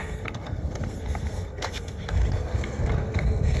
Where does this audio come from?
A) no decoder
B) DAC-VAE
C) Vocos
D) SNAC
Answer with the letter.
D